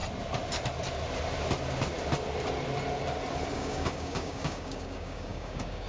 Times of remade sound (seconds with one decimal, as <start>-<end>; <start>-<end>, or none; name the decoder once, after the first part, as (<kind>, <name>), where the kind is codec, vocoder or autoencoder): 3.5-5.9 (codec, DAC)